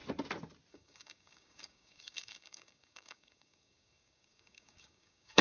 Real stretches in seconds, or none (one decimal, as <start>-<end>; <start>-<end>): 0.0-0.7